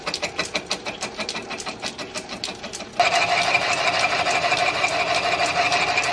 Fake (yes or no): no